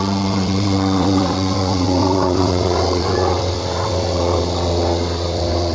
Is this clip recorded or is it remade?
remade